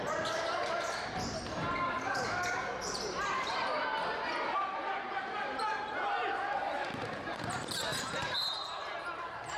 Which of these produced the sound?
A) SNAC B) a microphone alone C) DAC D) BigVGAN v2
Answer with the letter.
D